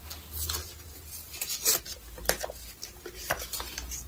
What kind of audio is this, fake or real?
real